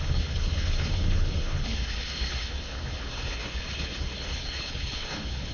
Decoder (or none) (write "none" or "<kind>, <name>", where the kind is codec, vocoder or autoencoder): codec, HILCodec